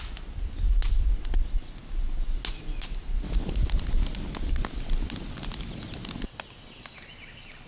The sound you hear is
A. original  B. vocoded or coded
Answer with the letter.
A